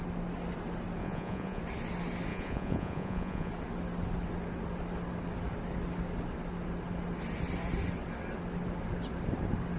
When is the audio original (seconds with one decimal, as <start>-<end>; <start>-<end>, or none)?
0.0-1.0; 1.6-2.3; 3.5-9.8